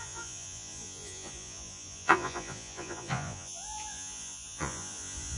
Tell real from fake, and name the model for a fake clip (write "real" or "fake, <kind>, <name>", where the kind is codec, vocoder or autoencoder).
fake, vocoder, Vocos